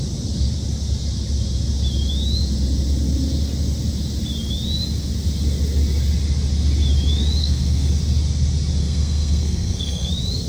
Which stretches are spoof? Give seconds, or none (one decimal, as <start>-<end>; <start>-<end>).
7.4-7.9; 8.8-10.1